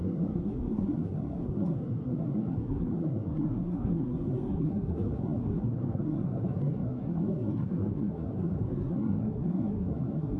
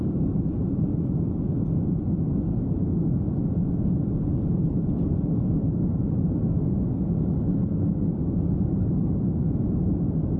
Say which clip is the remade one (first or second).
first